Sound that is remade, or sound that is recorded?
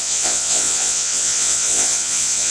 remade